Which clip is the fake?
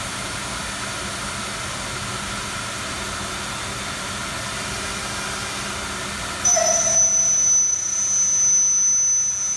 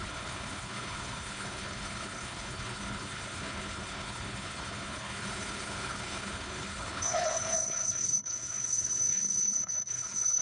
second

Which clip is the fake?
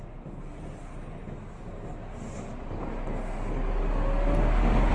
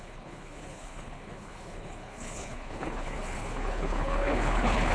second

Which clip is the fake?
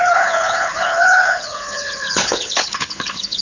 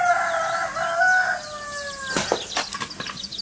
first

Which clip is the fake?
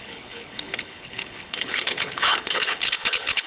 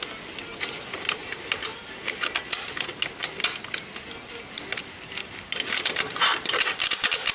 first